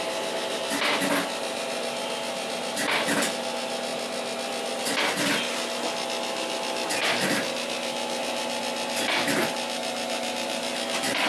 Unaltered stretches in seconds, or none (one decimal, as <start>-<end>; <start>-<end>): 0.0-11.3